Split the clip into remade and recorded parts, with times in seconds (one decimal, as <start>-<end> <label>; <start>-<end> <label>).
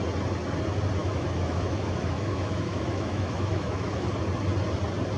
0.0-1.0 recorded; 1.0-4.1 remade; 4.1-5.2 recorded